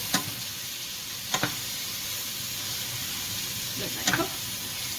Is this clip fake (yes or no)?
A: no